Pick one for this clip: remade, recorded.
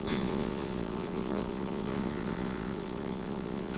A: remade